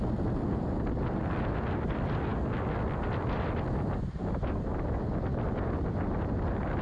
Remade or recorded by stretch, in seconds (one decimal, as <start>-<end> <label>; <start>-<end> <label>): 0.0-6.8 recorded